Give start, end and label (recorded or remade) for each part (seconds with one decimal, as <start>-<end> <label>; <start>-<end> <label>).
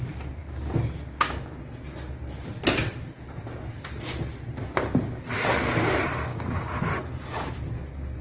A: 0.0-6.3 recorded; 6.3-6.8 remade; 6.8-8.2 recorded